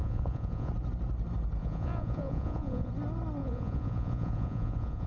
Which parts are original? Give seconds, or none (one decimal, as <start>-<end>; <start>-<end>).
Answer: 0.7-1.6; 2.9-3.4